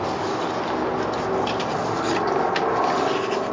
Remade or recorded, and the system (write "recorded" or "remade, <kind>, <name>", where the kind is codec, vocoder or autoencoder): recorded